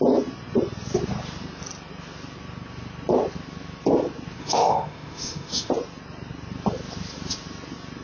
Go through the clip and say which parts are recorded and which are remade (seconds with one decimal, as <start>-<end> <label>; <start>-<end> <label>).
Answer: 0.0-4.4 recorded; 4.4-5.7 remade; 5.7-8.0 recorded